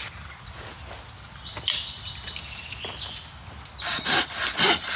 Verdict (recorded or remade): recorded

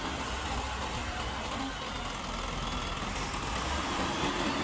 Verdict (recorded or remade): recorded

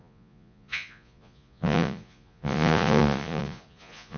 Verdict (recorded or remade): remade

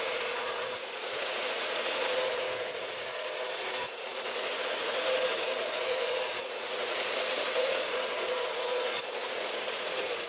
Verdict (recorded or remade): remade